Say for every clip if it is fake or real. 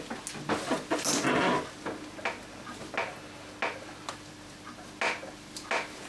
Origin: real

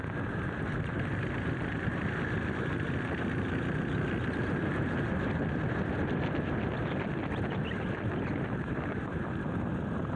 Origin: real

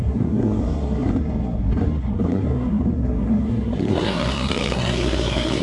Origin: fake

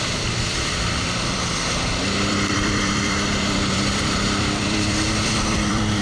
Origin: fake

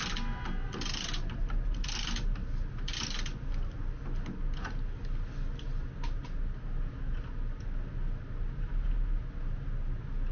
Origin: real